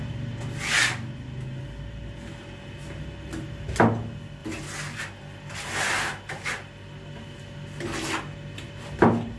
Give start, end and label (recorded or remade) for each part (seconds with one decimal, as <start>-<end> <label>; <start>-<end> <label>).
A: 0.0-9.4 recorded